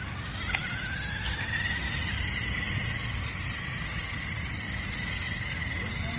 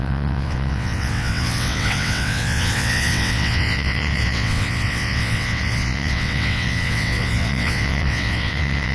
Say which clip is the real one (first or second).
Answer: first